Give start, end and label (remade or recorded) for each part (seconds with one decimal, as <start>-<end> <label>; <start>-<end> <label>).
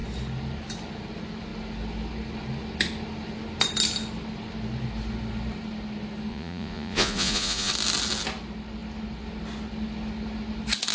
0.0-6.3 recorded; 6.3-7.7 remade; 7.7-10.9 recorded